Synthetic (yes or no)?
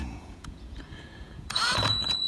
yes